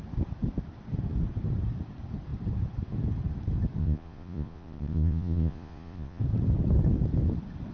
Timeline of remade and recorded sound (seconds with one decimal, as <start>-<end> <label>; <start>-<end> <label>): 0.0-3.8 recorded; 3.8-6.2 remade; 6.2-7.7 recorded